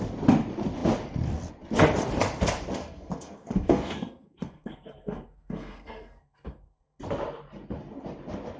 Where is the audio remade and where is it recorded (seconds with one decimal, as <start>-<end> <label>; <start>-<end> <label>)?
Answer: 0.0-2.8 recorded; 2.8-7.0 remade; 7.0-8.6 recorded